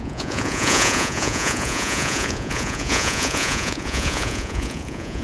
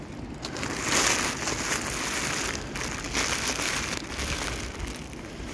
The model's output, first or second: first